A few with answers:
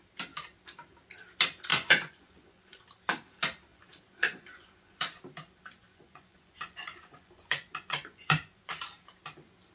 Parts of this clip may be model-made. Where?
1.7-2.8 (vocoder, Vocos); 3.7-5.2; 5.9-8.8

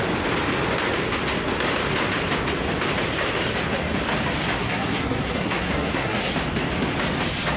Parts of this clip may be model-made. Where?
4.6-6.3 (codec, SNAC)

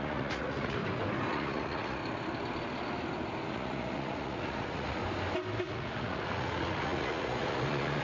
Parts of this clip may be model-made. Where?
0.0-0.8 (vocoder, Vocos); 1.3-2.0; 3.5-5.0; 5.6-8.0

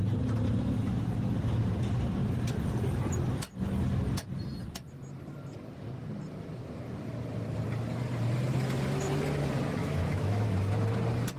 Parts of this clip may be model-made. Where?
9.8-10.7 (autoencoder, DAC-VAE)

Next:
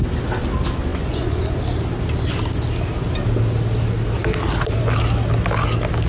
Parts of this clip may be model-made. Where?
0.9-1.6 (vocoder, Vocos)

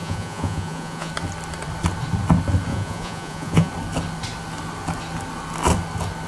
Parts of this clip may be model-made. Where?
0.0-1.1 (vocoder, Vocos); 2.7-3.7

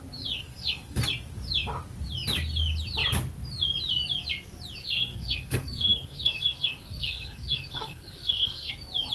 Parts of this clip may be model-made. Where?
0.4-1.0 (codec, SNAC); 4.8-8.7

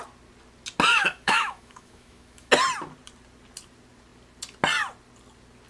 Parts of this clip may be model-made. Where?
0.9-2.5 (autoencoder, DAC-VAE)